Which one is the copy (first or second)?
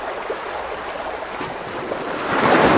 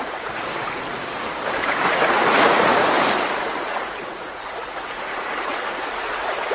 second